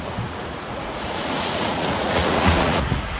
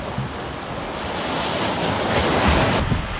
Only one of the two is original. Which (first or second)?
second